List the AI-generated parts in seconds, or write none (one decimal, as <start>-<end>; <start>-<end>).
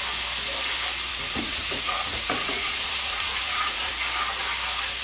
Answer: 1.1-3.9